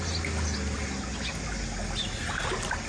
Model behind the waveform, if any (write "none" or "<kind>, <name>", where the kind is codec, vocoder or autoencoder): none